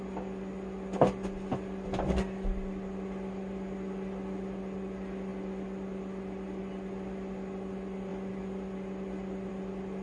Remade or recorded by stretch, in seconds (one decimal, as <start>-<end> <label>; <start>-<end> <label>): 0.0-10.0 recorded